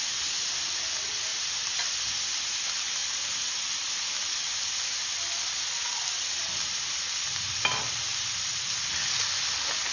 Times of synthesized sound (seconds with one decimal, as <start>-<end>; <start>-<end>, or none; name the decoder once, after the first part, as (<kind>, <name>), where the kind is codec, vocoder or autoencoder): none